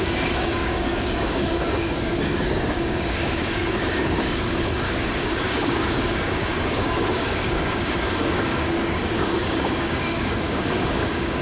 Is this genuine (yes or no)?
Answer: no